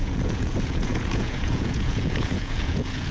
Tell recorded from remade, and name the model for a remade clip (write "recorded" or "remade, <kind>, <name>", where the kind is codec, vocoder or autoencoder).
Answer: remade, vocoder, Vocos